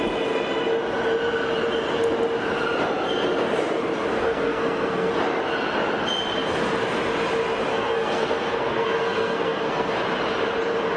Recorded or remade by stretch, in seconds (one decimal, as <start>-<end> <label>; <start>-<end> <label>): 0.0-4.2 recorded; 4.2-5.1 remade; 5.1-7.7 recorded; 7.7-10.0 remade; 10.0-11.0 recorded